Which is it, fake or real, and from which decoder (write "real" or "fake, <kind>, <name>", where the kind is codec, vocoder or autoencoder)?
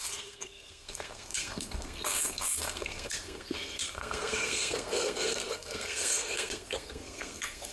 fake, codec, SNAC